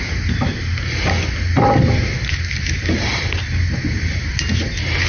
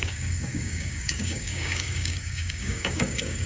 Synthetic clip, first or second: second